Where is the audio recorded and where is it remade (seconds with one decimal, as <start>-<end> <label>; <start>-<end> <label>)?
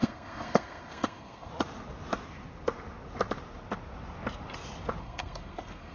0.0-1.5 remade; 1.5-5.0 recorded; 5.0-5.9 remade